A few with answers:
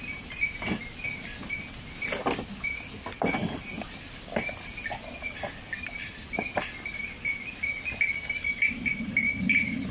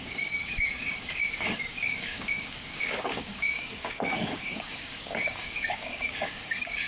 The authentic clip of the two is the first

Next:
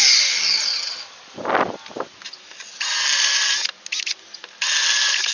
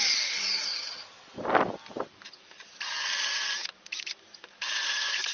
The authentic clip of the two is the first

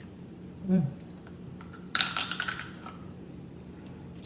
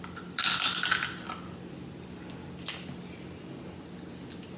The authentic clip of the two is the second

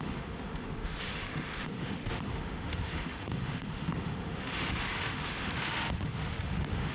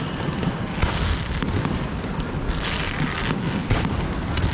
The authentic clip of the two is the second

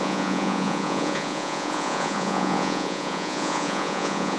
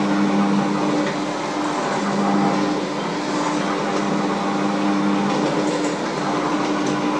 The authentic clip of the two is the second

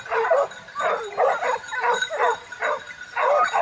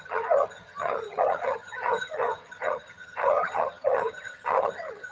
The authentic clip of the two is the first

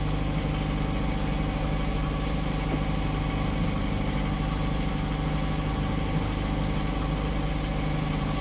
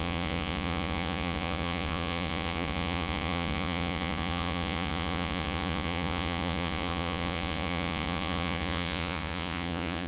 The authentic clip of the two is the first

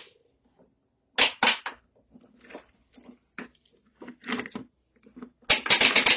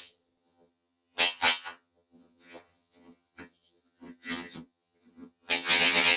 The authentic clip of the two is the first